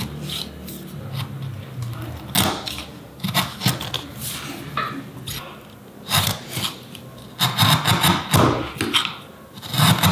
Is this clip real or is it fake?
real